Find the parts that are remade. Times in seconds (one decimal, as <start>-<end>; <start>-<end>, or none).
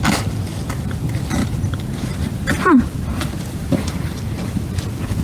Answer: 1.4-2.3; 3.5-4.1